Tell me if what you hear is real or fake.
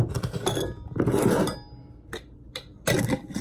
real